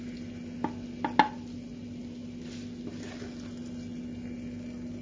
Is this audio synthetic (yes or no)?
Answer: no